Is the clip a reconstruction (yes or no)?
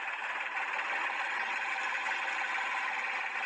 no